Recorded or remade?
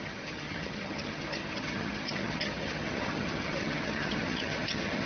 remade